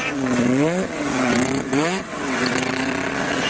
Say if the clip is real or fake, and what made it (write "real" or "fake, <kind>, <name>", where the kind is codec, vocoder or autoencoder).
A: fake, vocoder, WaveNeXt